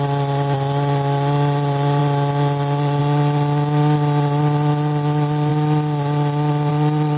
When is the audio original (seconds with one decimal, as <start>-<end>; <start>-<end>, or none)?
0.0-7.2

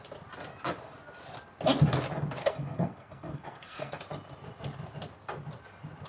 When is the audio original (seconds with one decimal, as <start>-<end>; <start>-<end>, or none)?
0.0-2.4; 4.0-6.1

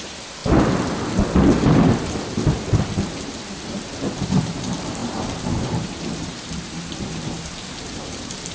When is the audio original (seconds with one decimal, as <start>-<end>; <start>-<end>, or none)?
0.4-4.2

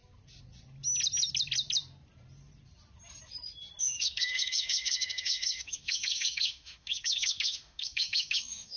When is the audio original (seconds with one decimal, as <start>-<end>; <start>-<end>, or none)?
0.0-3.8

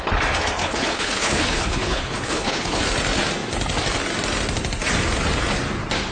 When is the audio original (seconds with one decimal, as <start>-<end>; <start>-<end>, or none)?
0.0-0.6; 2.8-6.1